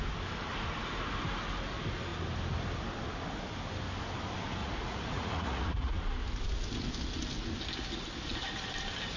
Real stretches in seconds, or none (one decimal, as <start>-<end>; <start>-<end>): 0.0-4.6; 6.0-9.2